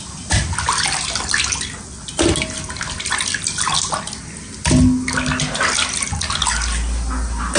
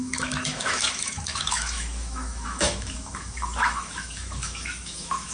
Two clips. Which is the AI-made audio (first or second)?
second